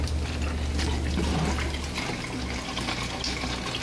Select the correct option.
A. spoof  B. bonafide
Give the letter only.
B